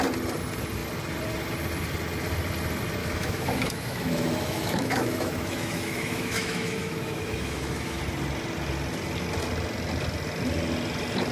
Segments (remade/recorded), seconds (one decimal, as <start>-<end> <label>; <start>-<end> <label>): 0.0-3.0 recorded; 3.0-8.0 remade; 8.0-11.3 recorded